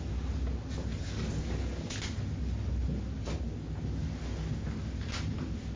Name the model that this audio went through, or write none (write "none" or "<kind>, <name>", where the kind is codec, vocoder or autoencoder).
none